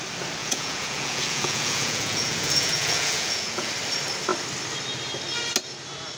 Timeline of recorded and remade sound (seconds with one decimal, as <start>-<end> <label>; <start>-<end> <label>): 0.0-0.4 recorded; 0.4-3.7 remade; 3.7-6.2 recorded